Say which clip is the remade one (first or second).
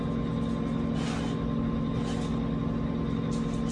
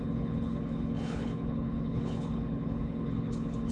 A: second